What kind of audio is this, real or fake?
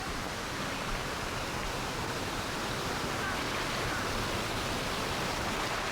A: real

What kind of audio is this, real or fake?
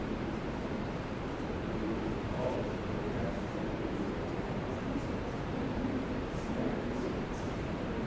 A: fake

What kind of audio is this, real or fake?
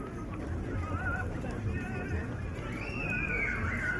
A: fake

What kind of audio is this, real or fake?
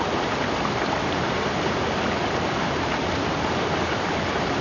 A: fake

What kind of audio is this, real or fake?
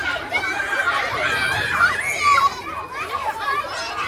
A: fake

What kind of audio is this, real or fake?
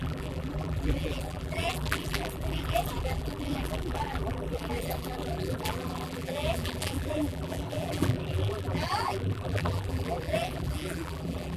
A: fake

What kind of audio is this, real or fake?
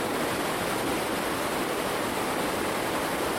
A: real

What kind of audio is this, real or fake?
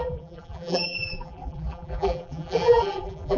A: fake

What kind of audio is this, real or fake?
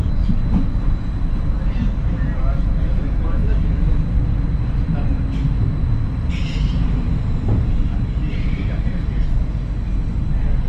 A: real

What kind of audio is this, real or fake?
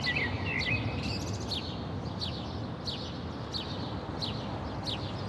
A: real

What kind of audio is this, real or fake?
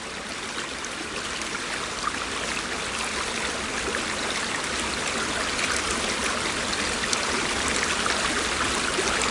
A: real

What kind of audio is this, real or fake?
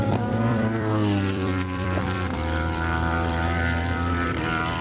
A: fake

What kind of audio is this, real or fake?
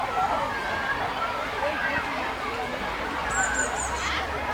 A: fake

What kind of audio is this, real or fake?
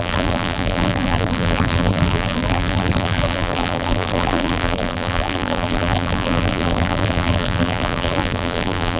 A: fake